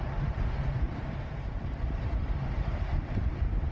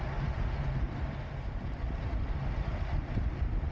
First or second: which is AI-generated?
first